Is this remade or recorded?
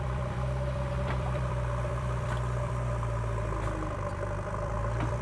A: remade